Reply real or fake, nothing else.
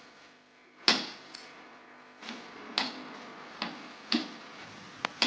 real